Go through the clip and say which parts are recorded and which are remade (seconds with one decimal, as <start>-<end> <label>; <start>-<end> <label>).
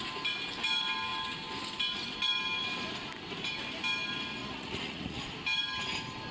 0.0-4.4 recorded; 4.4-5.2 remade; 5.2-6.3 recorded